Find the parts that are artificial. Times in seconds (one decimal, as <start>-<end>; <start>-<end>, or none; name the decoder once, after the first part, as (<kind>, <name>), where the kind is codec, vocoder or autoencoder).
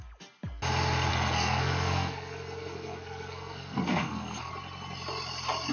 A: 1.1-4.5 (codec, SNAC)